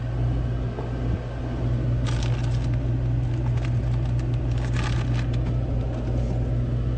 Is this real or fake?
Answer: real